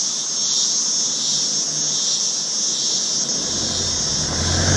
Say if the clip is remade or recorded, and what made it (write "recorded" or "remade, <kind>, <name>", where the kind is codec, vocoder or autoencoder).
recorded